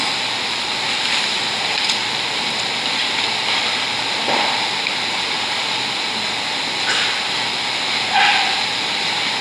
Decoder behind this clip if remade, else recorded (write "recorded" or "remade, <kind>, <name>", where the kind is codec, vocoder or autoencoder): recorded